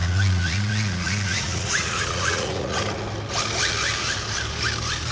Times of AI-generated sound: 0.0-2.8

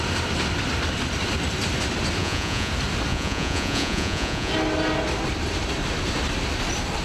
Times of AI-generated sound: 2.2-2.7; 3.1-4.5

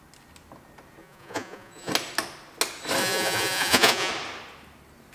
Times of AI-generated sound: 1.0-1.9; 3.0-4.1

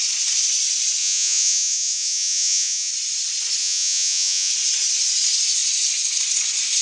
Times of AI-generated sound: 1.0-2.9; 3.6-4.5

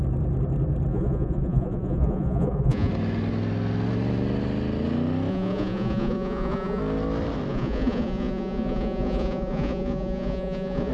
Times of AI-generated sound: 0.9-2.9; 5.3-6.8; 7.5-10.9

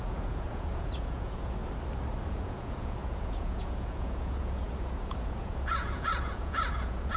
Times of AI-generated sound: 0.0-1.6; 2.3-7.2

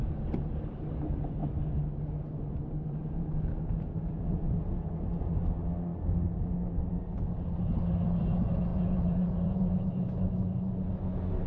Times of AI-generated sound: 3.0-5.4; 8.7-9.9

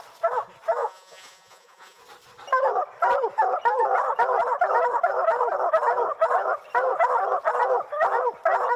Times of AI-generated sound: 0.8-2.0